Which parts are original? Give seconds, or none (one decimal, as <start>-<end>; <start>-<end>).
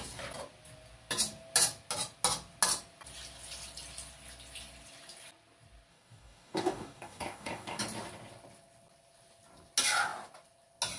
0.0-5.9; 7.8-11.0